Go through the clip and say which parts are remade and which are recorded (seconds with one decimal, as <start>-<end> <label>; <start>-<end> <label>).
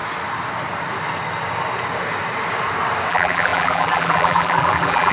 0.0-3.1 recorded; 3.1-5.1 remade